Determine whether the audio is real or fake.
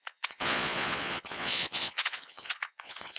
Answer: fake